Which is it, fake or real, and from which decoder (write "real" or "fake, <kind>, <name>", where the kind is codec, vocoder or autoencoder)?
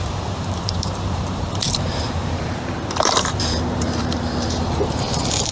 fake, vocoder, BigVGAN v2